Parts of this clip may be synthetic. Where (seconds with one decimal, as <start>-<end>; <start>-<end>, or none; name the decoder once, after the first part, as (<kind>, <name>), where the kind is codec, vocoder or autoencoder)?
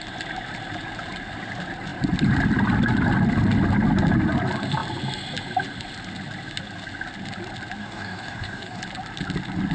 7.8-8.8 (codec, DAC)